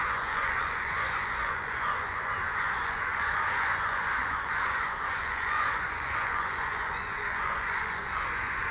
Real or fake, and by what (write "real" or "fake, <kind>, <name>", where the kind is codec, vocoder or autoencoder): fake, vocoder, Vocos